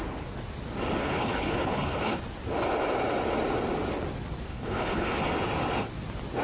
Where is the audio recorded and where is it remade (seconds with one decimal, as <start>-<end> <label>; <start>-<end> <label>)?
0.0-1.0 recorded; 1.0-2.2 remade; 2.2-4.5 recorded; 4.5-5.3 remade; 5.3-6.4 recorded